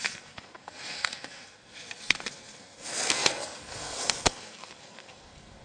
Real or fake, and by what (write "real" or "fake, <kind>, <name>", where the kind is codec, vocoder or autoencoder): fake, codec, SNAC